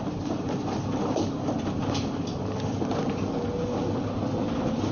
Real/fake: real